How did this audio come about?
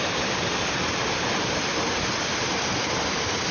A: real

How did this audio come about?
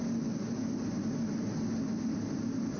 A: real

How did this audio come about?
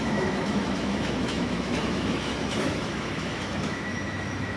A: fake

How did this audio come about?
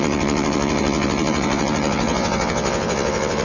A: fake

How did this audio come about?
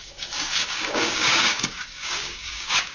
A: fake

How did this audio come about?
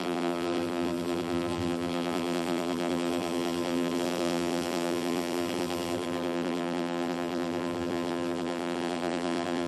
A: fake